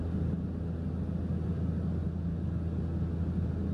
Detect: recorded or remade recorded